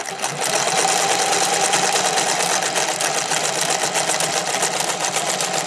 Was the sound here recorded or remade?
recorded